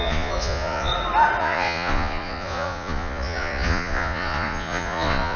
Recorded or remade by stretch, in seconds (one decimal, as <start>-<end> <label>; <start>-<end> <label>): 0.0-0.9 remade; 0.9-1.4 recorded; 1.4-5.4 remade